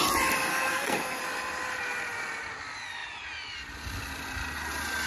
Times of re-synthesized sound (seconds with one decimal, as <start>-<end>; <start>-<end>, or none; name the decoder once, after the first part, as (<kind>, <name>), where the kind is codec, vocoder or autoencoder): 0.5-1.2 (codec, SNAC)